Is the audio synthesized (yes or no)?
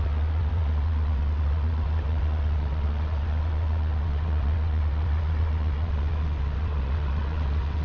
yes